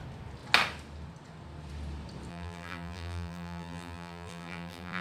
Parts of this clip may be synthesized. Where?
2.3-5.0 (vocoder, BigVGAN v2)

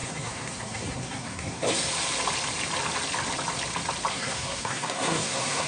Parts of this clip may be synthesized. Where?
0.0-1.9 (codec, SNAC); 4.1-5.7